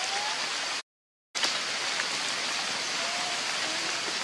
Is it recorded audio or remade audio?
recorded